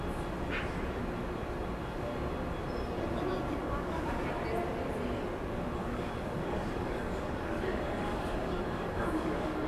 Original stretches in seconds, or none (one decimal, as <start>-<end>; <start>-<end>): 0.0-3.6; 4.2-5.8